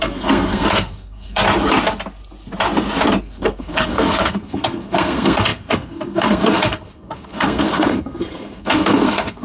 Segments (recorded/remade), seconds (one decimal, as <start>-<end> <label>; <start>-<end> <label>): 0.0-1.4 remade; 1.4-3.2 recorded; 3.2-9.4 remade